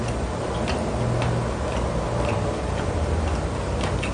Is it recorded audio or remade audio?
recorded